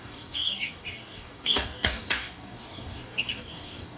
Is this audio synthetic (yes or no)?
yes